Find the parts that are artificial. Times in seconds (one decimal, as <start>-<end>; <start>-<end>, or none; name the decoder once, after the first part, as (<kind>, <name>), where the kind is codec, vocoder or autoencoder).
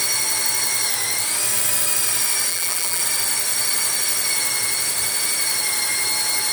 2.5-3.0 (vocoder, BigVGAN v2)